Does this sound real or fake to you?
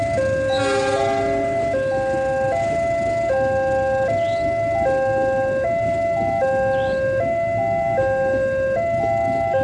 real